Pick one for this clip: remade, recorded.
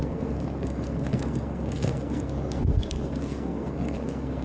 remade